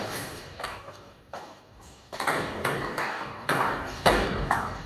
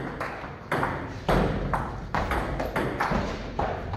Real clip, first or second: second